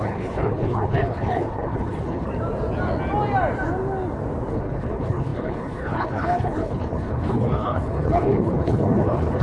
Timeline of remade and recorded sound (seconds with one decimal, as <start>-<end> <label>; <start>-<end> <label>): 0.0-2.3 remade; 2.3-4.5 recorded; 4.5-9.4 remade